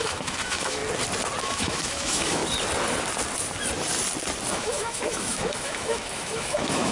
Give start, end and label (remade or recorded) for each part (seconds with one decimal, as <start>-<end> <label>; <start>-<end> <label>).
0.0-0.8 remade; 0.8-1.4 recorded; 1.4-2.4 remade; 2.4-4.5 recorded; 4.5-6.9 remade